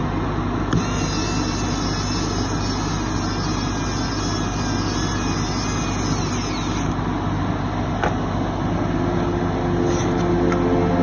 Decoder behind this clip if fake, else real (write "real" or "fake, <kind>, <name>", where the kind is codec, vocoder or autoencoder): real